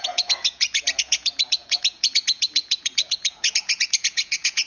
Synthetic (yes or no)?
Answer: yes